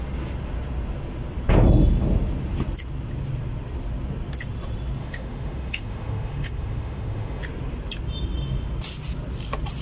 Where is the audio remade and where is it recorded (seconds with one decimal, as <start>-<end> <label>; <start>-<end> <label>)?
0.0-5.0 recorded; 5.0-7.4 remade; 7.4-9.8 recorded